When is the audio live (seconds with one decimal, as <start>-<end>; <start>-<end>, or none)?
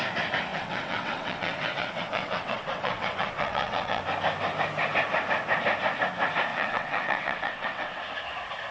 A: 0.0-0.5; 4.0-6.5; 8.0-8.7